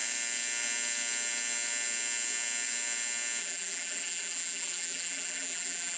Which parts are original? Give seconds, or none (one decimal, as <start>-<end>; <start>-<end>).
0.0-3.4